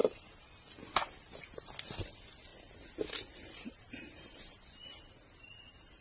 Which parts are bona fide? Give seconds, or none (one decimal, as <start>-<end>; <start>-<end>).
0.0-6.0